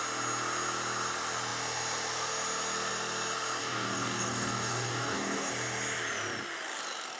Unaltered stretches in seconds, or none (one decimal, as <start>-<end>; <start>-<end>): 0.0-3.6; 5.5-7.2